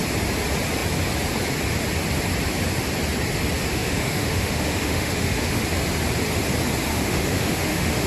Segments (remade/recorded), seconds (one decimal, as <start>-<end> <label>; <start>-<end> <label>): 0.0-3.7 recorded; 3.7-5.6 remade; 5.6-6.9 recorded; 6.9-8.1 remade